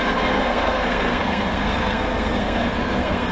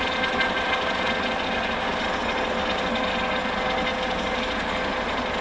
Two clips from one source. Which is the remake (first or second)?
first